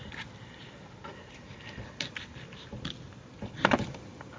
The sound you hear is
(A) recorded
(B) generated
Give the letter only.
A